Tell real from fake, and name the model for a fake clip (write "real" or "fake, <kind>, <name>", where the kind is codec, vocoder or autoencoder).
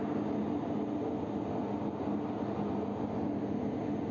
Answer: real